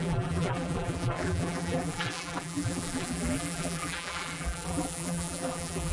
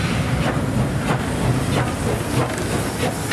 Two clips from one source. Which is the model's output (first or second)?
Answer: first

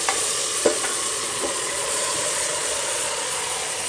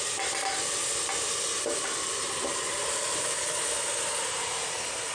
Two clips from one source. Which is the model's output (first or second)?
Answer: first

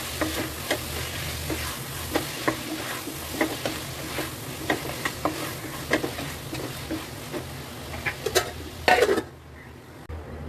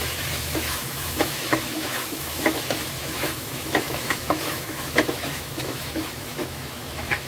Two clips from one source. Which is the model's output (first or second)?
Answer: second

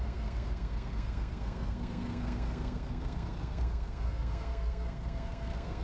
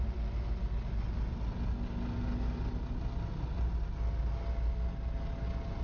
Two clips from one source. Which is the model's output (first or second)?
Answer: first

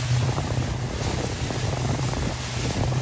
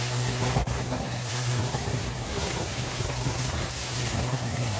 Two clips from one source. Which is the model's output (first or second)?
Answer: second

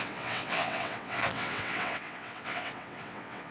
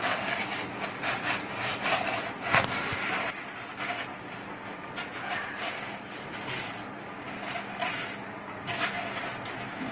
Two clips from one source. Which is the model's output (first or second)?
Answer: first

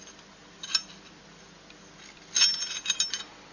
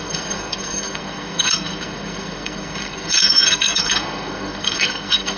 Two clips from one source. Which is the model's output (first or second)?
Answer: second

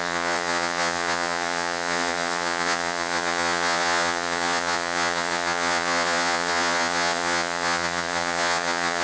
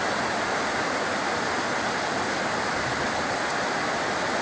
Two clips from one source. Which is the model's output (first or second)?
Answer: first